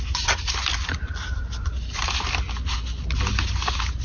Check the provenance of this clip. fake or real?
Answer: real